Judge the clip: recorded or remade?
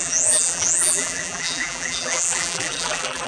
remade